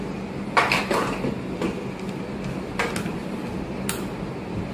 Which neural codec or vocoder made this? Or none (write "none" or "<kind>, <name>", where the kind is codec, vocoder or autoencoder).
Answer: none